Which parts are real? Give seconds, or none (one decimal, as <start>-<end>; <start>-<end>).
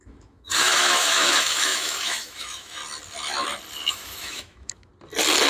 2.8-3.9; 4.9-5.5